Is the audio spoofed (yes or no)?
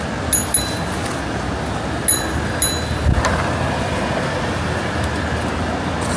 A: no